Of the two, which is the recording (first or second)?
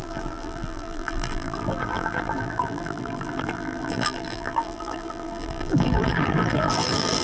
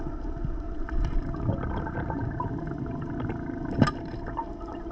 second